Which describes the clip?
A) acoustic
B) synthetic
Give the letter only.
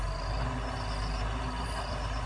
A